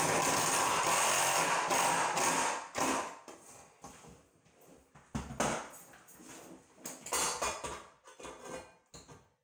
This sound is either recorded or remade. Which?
recorded